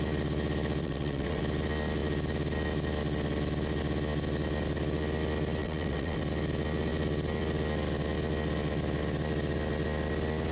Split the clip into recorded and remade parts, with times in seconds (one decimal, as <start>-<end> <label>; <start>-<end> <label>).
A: 0.0-0.8 recorded; 0.8-1.4 remade; 1.4-5.6 recorded; 5.6-6.2 remade; 6.2-10.5 recorded